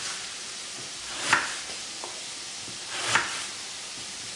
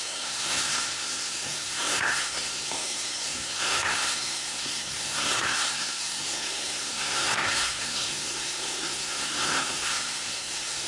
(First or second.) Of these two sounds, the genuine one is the first